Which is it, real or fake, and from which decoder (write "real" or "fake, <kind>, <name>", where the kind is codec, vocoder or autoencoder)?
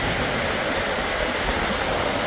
real